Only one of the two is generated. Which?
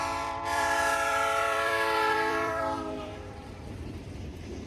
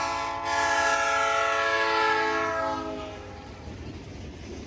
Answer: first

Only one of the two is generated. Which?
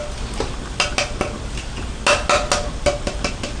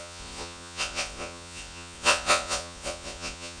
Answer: second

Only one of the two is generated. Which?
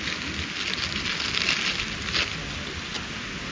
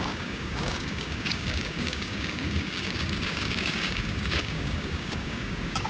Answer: second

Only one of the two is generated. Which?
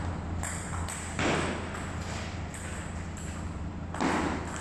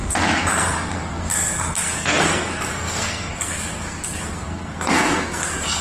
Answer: second